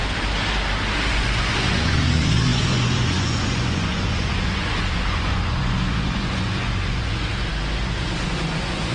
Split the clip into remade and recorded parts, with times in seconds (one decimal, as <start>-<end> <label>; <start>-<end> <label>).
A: 0.0-1.1 recorded; 1.1-8.9 remade

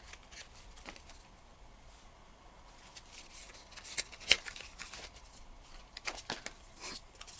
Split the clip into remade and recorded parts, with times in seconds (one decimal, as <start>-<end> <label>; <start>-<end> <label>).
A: 0.0-7.4 recorded

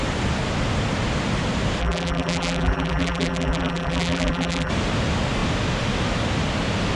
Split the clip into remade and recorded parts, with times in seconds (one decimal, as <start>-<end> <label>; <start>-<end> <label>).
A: 0.0-1.8 recorded; 1.8-4.7 remade; 4.7-7.0 recorded